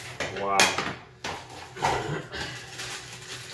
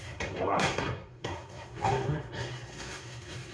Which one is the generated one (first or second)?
second